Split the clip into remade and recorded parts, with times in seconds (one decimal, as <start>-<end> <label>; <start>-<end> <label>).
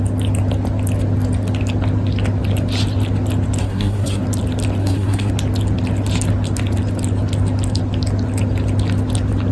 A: 0.0-3.6 recorded; 3.6-4.2 remade; 4.2-4.8 recorded; 4.8-5.3 remade; 5.3-9.5 recorded